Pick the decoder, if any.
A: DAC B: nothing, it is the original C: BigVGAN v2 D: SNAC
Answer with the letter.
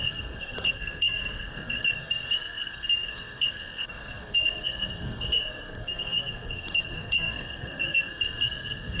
D